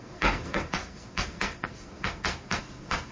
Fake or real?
fake